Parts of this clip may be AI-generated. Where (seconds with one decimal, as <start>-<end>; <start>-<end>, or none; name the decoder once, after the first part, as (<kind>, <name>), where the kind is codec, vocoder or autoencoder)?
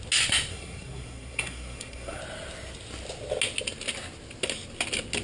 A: 0.5-2.2 (codec, SNAC)